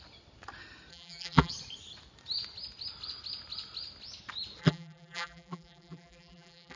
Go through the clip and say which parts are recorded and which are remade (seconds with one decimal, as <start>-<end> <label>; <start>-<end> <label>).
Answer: 0.0-0.9 recorded; 0.9-1.5 remade; 1.5-4.6 recorded; 4.6-6.8 remade